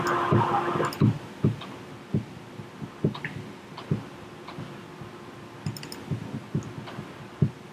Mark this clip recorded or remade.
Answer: recorded